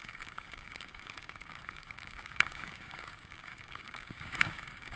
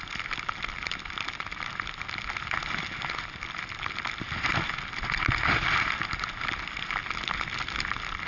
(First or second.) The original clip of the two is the second